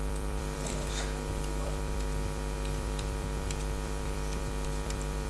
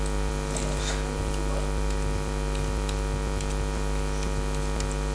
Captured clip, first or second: second